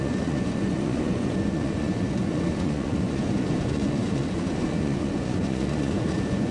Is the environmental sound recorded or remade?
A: remade